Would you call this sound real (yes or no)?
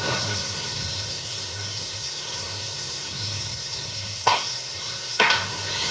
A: no